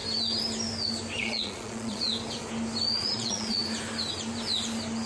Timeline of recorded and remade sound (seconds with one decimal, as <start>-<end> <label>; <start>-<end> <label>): 0.0-1.2 recorded; 1.2-2.1 remade; 2.1-3.0 recorded; 3.0-3.6 remade; 3.6-5.1 recorded